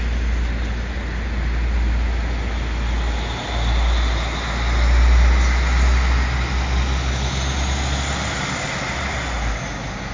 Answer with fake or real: real